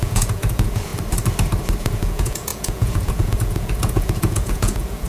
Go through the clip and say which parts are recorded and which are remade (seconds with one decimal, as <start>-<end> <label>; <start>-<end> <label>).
0.0-0.9 remade; 0.9-1.8 recorded; 1.8-5.1 remade

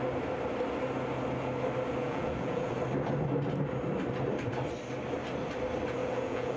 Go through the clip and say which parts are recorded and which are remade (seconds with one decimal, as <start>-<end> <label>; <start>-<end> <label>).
0.0-2.0 recorded; 2.0-2.7 remade; 2.7-6.0 recorded; 6.0-6.6 remade

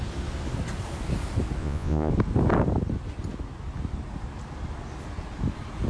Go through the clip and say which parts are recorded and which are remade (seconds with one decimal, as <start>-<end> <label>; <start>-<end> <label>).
0.0-1.6 recorded; 1.6-2.1 remade; 2.1-5.9 recorded

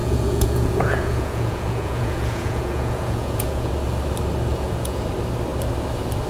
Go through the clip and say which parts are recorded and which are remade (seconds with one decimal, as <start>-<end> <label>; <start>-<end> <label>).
0.0-3.7 remade; 3.7-4.5 recorded; 4.5-5.0 remade; 5.0-6.3 recorded

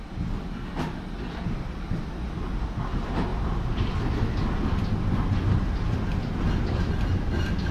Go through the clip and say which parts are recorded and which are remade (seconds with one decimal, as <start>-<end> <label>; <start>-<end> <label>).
0.0-7.7 recorded

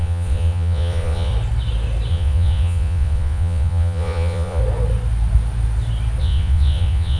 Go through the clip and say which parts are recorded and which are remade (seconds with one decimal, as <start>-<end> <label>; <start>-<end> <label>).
0.0-1.3 remade; 1.3-2.1 recorded; 2.1-4.6 remade; 4.6-6.2 recorded; 6.2-7.2 remade